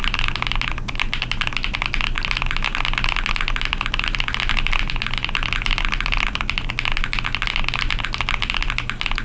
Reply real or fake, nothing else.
real